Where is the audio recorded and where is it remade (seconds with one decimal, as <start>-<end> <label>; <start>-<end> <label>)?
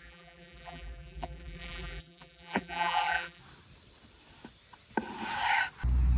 0.0-3.4 remade; 3.4-6.2 recorded